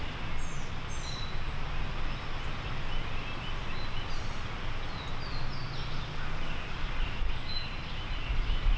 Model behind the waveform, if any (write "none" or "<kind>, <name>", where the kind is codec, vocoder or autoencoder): none